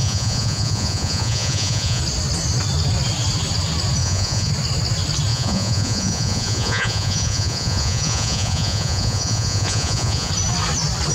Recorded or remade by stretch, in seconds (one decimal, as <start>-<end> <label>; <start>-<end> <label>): 0.0-2.0 remade; 2.0-4.0 recorded; 4.0-4.5 remade; 4.5-5.3 recorded; 5.3-10.3 remade; 10.3-11.1 recorded